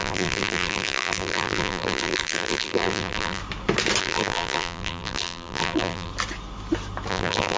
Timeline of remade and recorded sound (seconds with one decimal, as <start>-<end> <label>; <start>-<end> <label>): 0.0-3.4 remade; 3.4-4.0 recorded; 4.0-6.1 remade; 6.1-7.1 recorded; 7.1-7.6 remade